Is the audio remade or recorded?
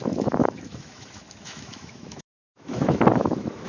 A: remade